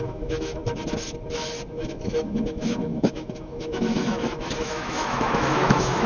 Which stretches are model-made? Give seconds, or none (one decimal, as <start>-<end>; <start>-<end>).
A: 0.0-0.6; 1.7-6.1